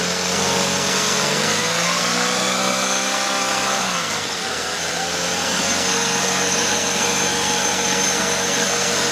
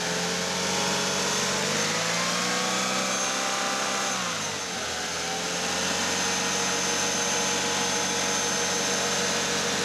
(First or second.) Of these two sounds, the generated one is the first